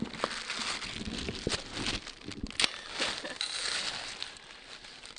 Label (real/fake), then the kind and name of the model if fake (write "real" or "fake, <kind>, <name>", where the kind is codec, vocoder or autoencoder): real